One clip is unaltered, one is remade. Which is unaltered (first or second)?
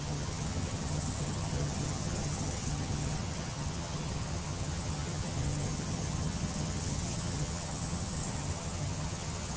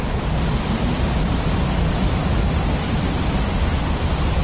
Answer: second